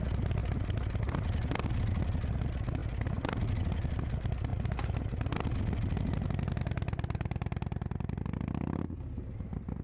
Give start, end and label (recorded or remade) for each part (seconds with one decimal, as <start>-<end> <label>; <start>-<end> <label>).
0.0-9.8 recorded